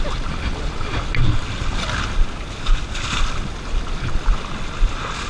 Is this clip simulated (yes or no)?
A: no